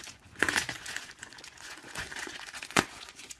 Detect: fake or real fake